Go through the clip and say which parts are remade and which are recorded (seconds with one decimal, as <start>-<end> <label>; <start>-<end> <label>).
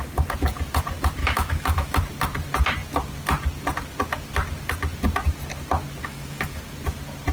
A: 0.0-1.2 recorded; 1.2-2.0 remade; 2.0-6.0 recorded; 6.0-6.6 remade; 6.6-7.3 recorded